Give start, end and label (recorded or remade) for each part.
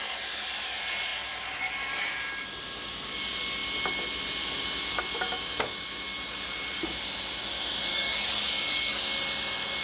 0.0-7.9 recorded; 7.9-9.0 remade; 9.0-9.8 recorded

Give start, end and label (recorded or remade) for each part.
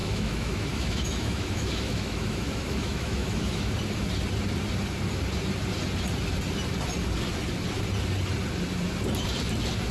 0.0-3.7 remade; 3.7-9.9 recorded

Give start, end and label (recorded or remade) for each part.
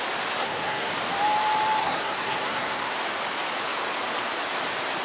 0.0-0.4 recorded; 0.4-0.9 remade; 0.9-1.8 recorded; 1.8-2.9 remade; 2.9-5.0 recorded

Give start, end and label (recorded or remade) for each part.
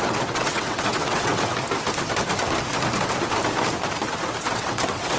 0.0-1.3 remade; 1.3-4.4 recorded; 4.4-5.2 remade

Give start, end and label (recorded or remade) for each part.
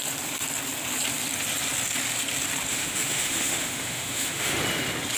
0.0-2.7 recorded; 2.7-4.6 remade; 4.6-5.2 recorded